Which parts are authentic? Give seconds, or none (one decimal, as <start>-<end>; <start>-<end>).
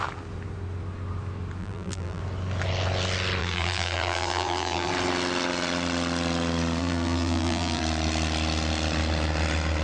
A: 0.0-1.6; 2.2-3.4; 4.9-6.8; 7.8-9.8